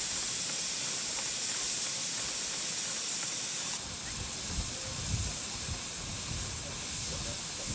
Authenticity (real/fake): real